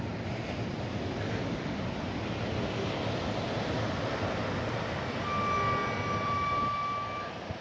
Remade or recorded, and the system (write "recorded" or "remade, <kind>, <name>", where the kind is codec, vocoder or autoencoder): recorded